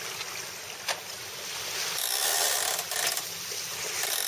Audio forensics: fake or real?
real